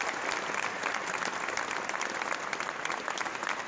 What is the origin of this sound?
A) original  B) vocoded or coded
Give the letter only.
A